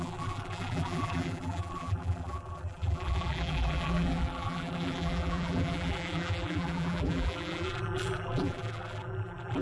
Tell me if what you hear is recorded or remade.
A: remade